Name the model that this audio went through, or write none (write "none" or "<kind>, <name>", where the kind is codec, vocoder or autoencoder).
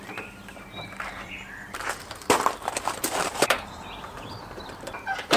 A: vocoder, BigVGAN v2